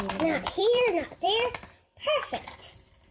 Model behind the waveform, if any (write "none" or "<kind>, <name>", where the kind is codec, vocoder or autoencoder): vocoder, BigVGAN v2